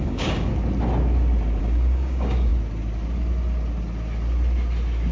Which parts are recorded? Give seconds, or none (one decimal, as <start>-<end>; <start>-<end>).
0.5-1.6; 2.5-5.1